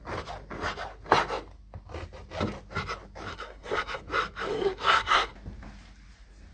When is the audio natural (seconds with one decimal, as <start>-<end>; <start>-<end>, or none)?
0.0-3.3; 4.0-4.5; 5.3-6.5